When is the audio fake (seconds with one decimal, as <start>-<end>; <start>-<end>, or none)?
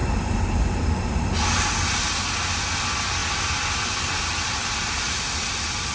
none